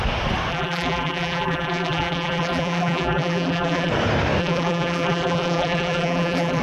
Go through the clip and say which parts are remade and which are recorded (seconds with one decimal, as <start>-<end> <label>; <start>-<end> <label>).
0.0-0.5 recorded; 0.5-3.9 remade; 3.9-4.4 recorded; 4.4-6.6 remade